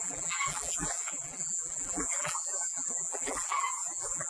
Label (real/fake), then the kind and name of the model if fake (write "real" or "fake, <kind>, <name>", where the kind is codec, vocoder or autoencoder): fake, vocoder, BigVGAN v2